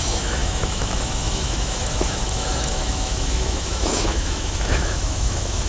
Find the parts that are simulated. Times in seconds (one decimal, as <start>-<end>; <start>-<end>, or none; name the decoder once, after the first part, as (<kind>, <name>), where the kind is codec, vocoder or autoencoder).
0.0-5.7 (autoencoder, DAC-VAE)